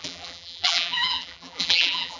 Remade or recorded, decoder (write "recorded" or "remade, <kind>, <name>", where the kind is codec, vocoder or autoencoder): remade, vocoder, BigVGAN v2